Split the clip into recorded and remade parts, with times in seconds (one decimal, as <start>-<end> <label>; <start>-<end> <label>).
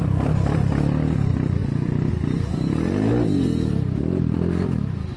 0.0-5.2 remade